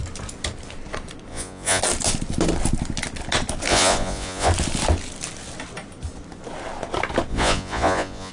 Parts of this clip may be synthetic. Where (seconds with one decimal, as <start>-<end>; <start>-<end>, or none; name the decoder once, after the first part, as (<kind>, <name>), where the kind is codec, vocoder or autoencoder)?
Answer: 1.3-1.8 (vocoder, Vocos); 3.7-4.5; 7.3-8.3